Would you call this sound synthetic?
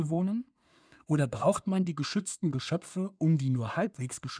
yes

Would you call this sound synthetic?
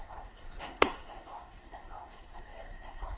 yes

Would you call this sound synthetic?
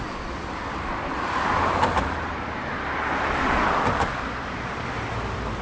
no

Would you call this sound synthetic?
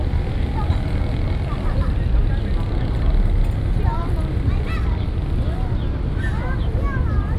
no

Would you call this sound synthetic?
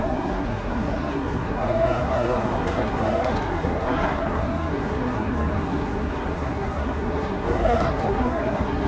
yes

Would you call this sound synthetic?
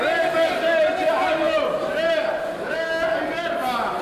no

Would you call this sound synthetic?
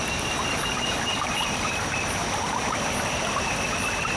no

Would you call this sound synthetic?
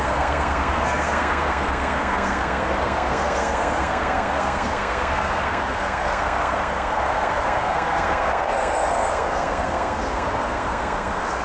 yes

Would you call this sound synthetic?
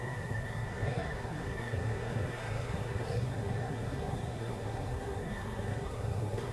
yes